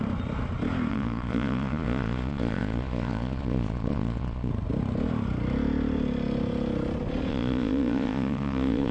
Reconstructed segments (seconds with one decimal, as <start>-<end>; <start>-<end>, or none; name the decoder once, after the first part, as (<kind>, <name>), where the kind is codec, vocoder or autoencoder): 0.9-4.5 (vocoder, Vocos); 7.3-8.9

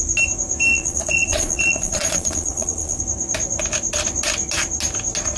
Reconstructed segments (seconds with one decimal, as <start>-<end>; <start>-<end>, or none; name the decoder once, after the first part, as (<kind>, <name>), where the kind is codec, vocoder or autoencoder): 0.7-3.0 (vocoder, Vocos)